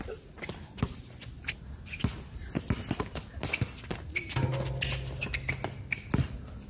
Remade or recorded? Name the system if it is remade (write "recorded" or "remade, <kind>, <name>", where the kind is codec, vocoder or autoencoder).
recorded